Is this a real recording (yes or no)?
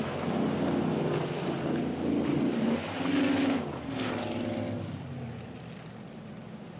yes